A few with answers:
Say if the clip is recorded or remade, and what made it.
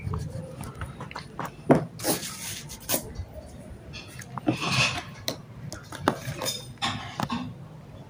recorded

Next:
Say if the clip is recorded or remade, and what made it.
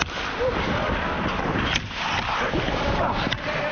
recorded